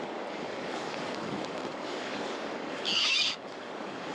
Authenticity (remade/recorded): remade